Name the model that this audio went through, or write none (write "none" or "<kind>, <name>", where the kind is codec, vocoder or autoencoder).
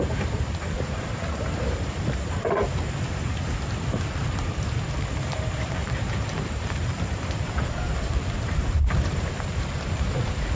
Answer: vocoder, BigVGAN v2